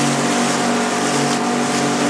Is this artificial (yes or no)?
no